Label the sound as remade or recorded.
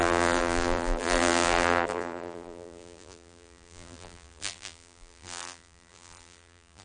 remade